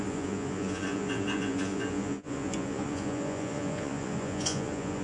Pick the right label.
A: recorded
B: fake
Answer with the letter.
B